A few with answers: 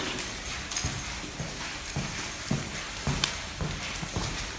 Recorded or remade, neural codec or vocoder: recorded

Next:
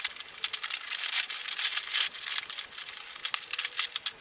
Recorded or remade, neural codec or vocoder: recorded